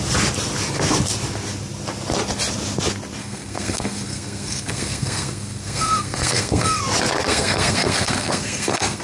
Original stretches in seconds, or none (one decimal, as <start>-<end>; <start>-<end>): 0.0-3.2; 6.8-7.3